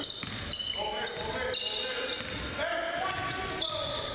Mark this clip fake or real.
real